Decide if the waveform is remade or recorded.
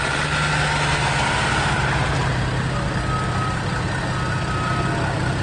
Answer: recorded